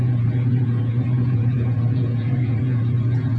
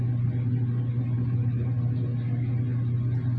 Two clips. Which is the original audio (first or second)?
second